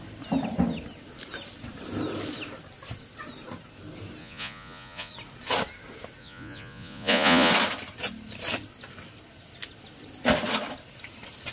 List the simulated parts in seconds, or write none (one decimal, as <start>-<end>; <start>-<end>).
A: 4.2-5.1; 6.2-7.5